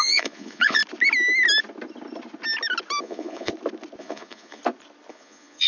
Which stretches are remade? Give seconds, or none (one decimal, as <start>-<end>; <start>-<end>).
0.0-0.8; 3.0-3.5; 4.0-4.6; 5.1-5.7